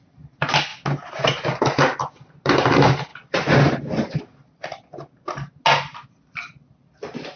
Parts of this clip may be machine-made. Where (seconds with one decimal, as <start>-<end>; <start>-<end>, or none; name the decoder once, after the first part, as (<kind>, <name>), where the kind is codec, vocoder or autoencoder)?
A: none